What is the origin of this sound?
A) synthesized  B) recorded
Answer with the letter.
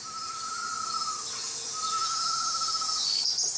B